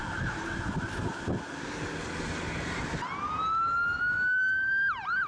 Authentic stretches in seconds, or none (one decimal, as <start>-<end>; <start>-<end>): 0.0-5.3